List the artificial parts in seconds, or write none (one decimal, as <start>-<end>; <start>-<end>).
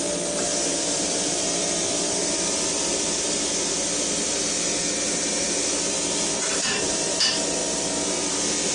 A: 0.7-3.5; 5.9-7.1